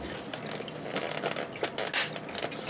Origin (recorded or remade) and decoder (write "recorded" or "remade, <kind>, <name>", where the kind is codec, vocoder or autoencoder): recorded